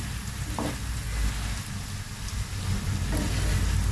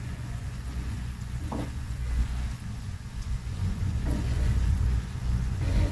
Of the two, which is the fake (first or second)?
second